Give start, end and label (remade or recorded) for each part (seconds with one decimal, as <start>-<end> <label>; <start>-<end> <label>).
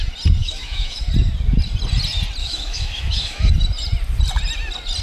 0.0-0.4 recorded; 0.4-1.1 remade; 1.1-2.4 recorded; 2.4-3.5 remade; 3.5-5.0 recorded